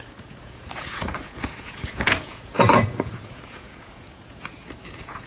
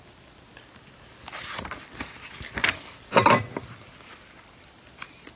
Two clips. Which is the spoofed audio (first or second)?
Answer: first